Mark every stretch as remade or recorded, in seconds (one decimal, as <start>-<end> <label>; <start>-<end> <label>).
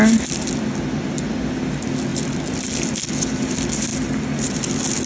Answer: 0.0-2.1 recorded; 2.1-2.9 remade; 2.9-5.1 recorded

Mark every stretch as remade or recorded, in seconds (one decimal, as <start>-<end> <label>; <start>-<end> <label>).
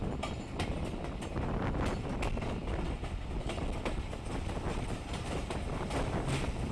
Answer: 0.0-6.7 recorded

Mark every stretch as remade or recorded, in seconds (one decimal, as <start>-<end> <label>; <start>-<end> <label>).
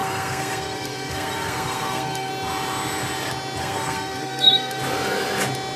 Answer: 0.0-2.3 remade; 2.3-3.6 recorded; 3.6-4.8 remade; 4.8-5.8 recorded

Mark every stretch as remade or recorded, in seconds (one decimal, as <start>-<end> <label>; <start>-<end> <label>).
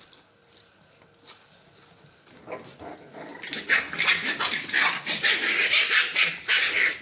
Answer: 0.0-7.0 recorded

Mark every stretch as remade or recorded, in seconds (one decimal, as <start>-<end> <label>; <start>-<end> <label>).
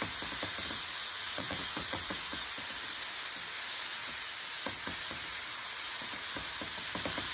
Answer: 0.0-0.6 recorded; 0.6-2.9 remade; 2.9-3.9 recorded; 3.9-6.3 remade; 6.3-7.3 recorded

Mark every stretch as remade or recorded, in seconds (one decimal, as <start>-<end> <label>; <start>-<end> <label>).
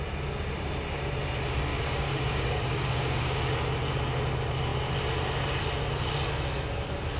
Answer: 0.0-1.7 recorded; 1.7-3.4 remade; 3.4-7.2 recorded